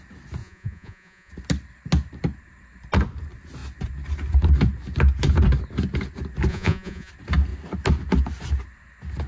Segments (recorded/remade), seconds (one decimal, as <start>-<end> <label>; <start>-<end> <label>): 0.0-0.4 recorded; 0.4-1.3 remade; 1.3-6.5 recorded; 6.5-7.1 remade; 7.1-9.3 recorded